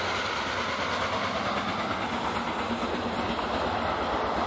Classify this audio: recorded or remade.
recorded